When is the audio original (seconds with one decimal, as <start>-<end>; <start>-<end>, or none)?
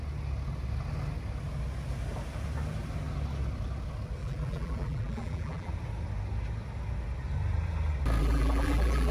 0.0-4.2; 5.7-8.2